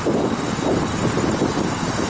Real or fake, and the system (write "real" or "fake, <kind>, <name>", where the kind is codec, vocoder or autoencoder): real